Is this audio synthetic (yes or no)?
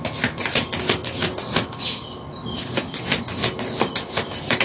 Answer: no